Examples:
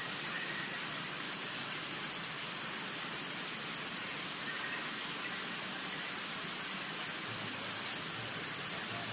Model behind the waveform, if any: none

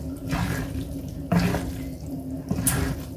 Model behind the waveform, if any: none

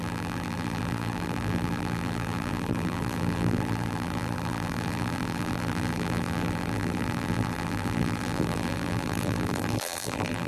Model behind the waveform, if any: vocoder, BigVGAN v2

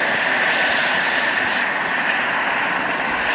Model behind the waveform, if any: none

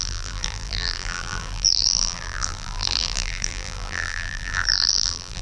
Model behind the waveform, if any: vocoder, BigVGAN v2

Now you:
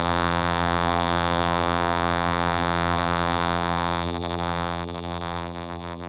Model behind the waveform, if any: vocoder, BigVGAN v2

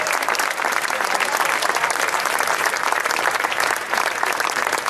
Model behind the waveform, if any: vocoder, BigVGAN v2